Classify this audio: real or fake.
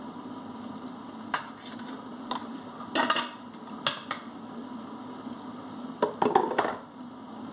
real